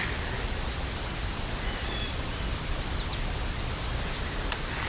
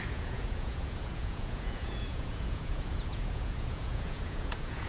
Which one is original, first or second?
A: first